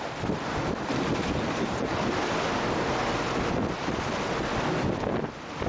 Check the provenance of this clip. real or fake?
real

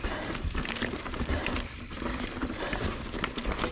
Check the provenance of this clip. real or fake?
real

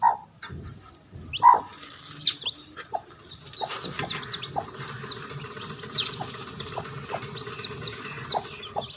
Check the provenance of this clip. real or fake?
real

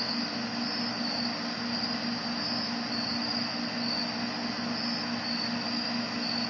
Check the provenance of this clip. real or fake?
real